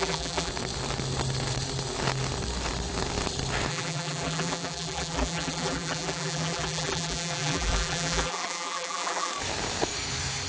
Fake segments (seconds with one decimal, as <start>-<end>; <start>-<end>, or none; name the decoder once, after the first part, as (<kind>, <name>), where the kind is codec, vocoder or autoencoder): 0.0-0.5 (vocoder, BigVGAN v2); 3.7-9.3